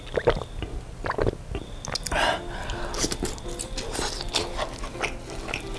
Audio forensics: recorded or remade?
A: recorded